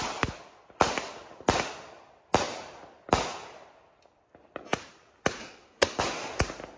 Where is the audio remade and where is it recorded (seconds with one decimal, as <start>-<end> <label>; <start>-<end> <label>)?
0.0-5.4 recorded; 5.4-6.0 remade; 6.0-6.8 recorded